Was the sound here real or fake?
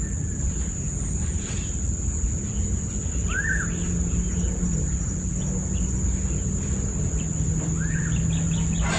real